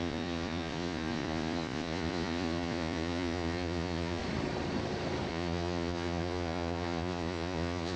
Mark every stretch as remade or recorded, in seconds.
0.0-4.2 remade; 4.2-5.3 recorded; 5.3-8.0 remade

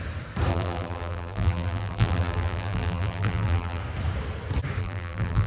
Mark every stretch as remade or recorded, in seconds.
0.0-0.5 recorded; 0.5-3.8 remade; 3.8-4.8 recorded; 4.8-5.5 remade

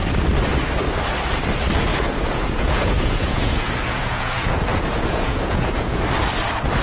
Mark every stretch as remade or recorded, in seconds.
0.0-1.9 recorded; 1.9-6.0 remade; 6.0-6.8 recorded

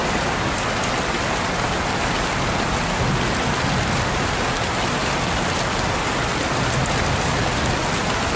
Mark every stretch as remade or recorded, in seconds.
0.0-8.4 recorded

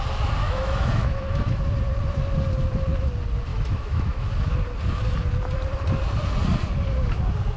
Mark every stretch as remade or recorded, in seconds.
0.0-0.4 recorded; 0.4-1.6 remade; 1.6-3.5 recorded; 3.5-4.3 remade; 4.3-7.6 recorded

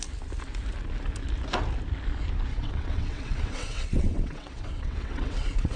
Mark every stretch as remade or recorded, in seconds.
0.0-2.5 recorded; 2.5-5.8 remade

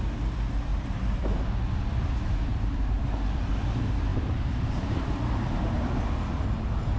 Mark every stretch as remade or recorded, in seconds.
0.0-0.7 recorded; 0.7-1.2 remade; 1.2-2.5 recorded; 2.5-3.2 remade; 3.2-4.1 recorded; 4.1-5.9 remade; 5.9-7.0 recorded